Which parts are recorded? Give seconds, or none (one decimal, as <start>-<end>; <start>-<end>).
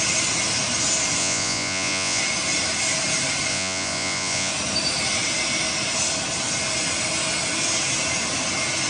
0.0-1.2; 2.2-3.5; 4.5-8.9